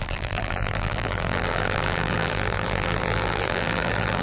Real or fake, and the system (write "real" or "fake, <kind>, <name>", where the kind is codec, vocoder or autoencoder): fake, vocoder, BigVGAN v2